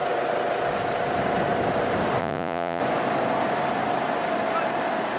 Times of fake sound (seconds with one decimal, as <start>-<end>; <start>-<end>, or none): 2.2-2.8